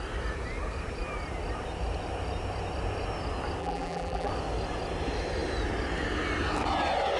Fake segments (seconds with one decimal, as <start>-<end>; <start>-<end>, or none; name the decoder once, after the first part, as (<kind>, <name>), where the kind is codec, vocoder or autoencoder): 3.6-4.3 (vocoder, BigVGAN v2)